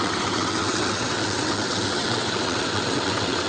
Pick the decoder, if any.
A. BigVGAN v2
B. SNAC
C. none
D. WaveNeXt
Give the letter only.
D